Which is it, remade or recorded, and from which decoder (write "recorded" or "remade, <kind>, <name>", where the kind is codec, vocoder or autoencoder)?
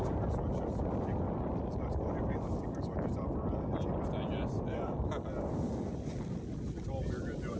recorded